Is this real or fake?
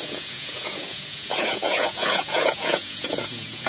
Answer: fake